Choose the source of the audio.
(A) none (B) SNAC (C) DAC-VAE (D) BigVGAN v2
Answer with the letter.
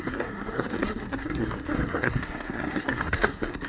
B